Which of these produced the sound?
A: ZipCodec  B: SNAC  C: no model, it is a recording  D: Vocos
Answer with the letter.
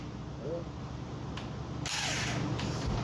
C